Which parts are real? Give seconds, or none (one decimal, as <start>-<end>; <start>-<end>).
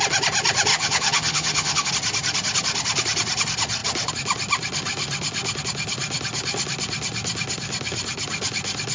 0.0-0.7; 1.9-8.9